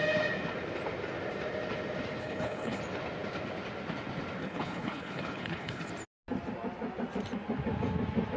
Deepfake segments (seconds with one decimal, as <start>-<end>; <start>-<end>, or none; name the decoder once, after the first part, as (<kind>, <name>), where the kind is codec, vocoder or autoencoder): 2.2-2.8 (codec, HILCodec); 4.4-5.9